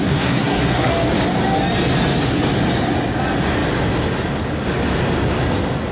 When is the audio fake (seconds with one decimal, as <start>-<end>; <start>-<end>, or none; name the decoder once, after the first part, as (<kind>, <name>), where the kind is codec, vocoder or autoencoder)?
0.0-0.9 (codec, SNAC)